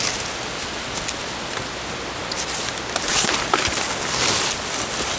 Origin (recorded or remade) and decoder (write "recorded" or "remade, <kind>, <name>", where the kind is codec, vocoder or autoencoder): recorded